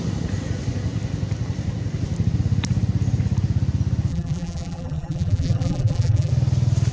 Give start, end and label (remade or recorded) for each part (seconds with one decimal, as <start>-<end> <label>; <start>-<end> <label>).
0.0-4.1 recorded; 4.1-6.3 remade; 6.3-6.9 recorded